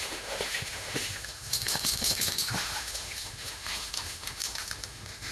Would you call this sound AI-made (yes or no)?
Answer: yes